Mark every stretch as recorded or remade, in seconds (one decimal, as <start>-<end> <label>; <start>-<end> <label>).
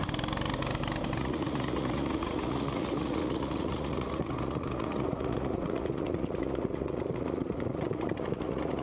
0.0-1.2 recorded; 1.2-8.8 remade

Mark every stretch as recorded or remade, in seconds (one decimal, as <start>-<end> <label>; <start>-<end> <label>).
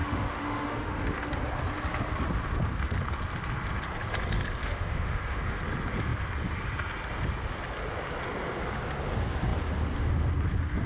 0.0-1.3 remade; 1.3-4.6 recorded; 4.6-5.6 remade; 5.6-10.9 recorded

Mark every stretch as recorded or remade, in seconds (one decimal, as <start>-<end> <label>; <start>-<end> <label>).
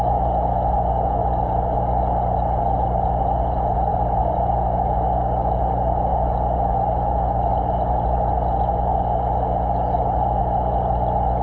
0.0-3.9 recorded; 3.9-4.5 remade; 4.5-11.4 recorded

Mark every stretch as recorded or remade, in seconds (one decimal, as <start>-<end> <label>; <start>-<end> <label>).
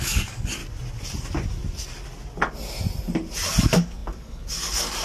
0.0-0.6 remade; 0.6-3.6 recorded; 3.6-5.0 remade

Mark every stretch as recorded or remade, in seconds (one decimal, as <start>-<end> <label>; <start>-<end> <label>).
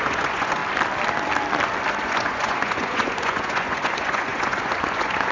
0.0-0.6 remade; 0.6-1.9 recorded; 1.9-5.3 remade